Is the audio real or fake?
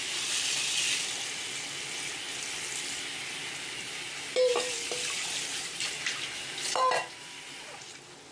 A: real